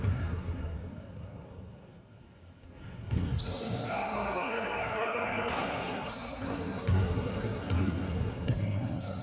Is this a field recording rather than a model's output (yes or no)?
no